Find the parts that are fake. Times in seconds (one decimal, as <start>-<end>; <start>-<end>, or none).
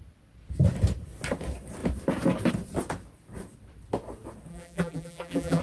4.5-5.6